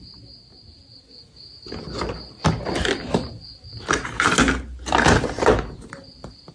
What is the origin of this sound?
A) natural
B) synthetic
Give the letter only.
A